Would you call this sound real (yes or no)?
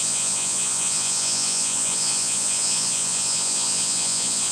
no